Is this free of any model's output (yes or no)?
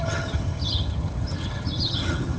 no